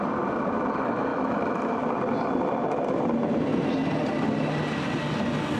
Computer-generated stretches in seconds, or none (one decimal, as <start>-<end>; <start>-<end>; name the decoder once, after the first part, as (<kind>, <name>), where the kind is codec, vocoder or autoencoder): 1.1-1.8 (autoencoder, DAC-VAE)